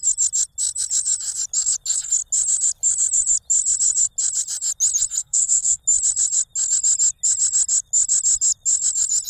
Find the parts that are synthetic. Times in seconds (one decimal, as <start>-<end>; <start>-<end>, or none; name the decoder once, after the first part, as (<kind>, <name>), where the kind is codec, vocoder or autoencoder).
5.2-5.8 (codec, SNAC)